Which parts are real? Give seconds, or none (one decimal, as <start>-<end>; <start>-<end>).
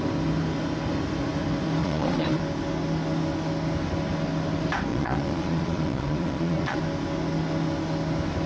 0.0-1.8; 2.4-4.9; 6.8-8.5